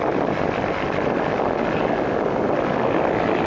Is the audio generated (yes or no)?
no